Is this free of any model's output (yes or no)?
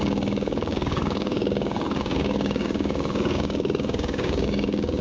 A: no